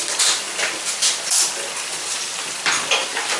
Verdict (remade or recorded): recorded